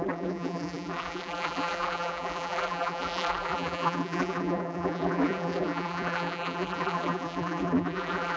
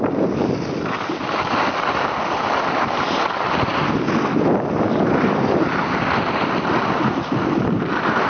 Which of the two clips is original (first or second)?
second